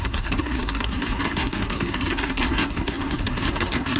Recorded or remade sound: remade